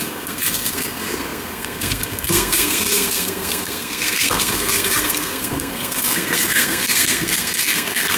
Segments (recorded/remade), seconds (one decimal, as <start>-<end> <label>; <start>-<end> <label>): 0.0-8.2 remade